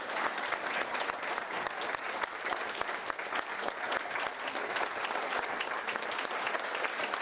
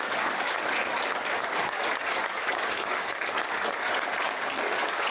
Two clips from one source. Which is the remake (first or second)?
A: second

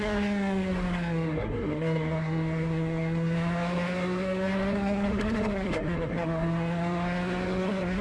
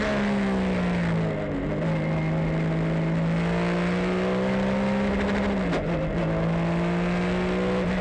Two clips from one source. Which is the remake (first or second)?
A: first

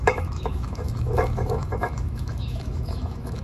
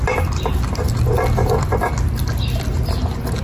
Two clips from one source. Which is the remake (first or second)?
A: first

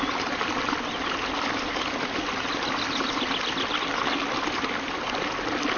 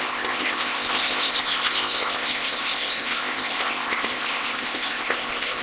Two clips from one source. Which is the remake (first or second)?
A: second